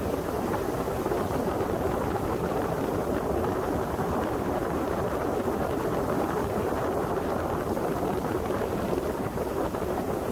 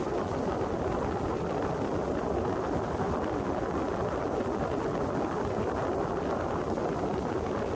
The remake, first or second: first